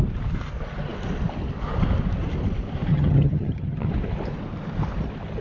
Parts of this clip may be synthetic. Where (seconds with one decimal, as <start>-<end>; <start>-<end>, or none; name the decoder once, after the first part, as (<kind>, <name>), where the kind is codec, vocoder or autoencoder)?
2.9-3.9 (vocoder, HiFi-GAN)